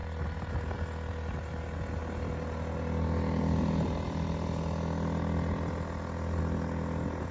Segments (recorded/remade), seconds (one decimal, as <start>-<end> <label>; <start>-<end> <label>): 0.0-7.3 recorded